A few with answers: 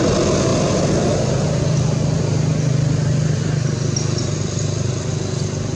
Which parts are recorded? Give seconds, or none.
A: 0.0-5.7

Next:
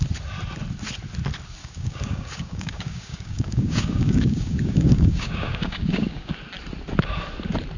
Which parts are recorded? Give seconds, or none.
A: 0.0-1.6; 6.3-7.8

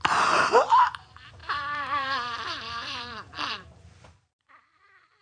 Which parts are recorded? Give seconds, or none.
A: 0.0-1.4; 4.5-5.2

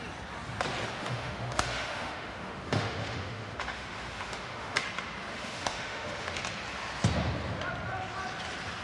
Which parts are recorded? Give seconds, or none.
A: 0.0-1.0; 4.8-5.3; 6.4-8.8

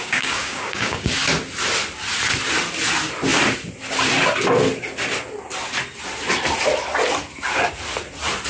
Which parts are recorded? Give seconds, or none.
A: 1.1-8.5

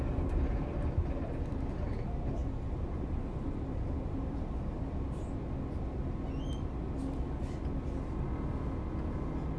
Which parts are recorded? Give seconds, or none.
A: 0.0-2.4; 5.4-9.6

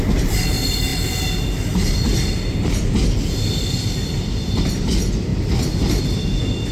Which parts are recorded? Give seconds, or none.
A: 0.0-6.7